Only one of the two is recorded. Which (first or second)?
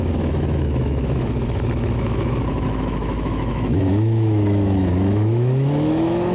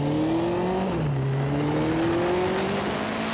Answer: second